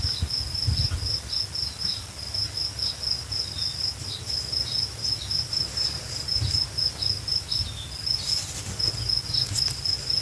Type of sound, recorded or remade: recorded